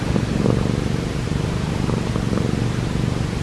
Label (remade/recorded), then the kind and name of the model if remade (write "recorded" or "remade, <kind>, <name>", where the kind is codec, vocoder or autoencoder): recorded